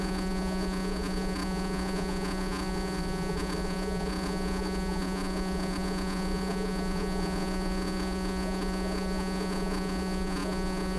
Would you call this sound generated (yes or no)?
yes